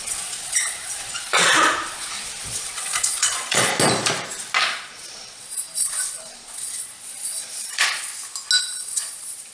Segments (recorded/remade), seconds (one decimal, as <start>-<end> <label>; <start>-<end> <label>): 0.0-3.7 remade; 3.7-4.6 recorded; 4.6-8.1 remade; 8.1-8.6 recorded; 8.6-9.5 remade